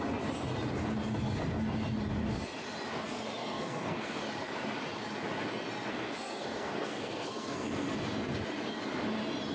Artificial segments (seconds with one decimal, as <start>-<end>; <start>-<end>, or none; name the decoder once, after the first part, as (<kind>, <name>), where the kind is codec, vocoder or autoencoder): 3.4-4.2 (codec, SNAC); 5.9-7.9